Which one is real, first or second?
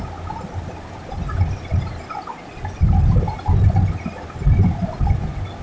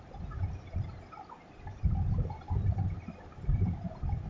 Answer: first